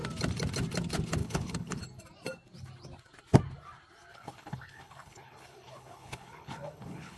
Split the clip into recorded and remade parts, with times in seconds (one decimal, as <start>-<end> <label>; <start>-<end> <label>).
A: 0.0-1.2 recorded; 1.2-1.8 remade; 1.8-4.1 recorded; 4.1-7.2 remade